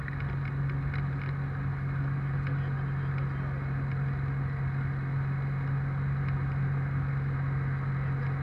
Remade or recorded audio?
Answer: recorded